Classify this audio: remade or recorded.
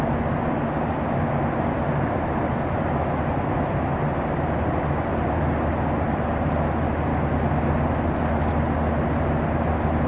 recorded